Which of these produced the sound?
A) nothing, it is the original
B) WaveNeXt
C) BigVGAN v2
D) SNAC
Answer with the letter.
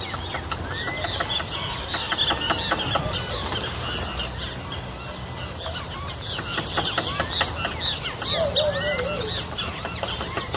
A